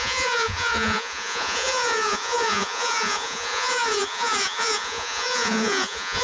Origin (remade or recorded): remade